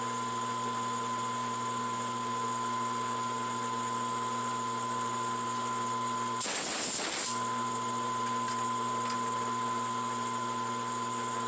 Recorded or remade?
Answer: recorded